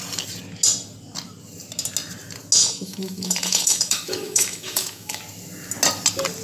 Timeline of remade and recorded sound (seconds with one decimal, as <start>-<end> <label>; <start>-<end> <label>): 0.0-2.6 recorded; 2.6-5.2 remade; 5.2-6.4 recorded